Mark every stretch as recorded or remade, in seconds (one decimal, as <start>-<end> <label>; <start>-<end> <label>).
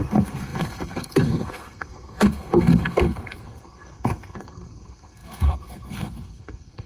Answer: 0.0-6.9 remade